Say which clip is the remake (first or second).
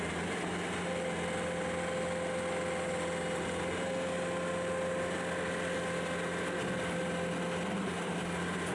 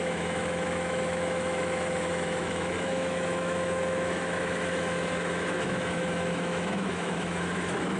second